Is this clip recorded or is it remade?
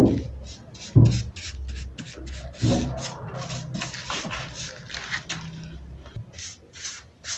recorded